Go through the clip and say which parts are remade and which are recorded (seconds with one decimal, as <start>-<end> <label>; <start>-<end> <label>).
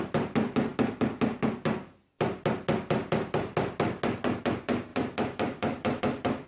0.0-0.7 remade; 0.7-2.9 recorded; 2.9-3.5 remade; 3.5-4.4 recorded; 4.4-6.5 remade